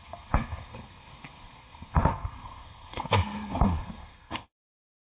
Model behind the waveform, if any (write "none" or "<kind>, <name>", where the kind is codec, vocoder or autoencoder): codec, SNAC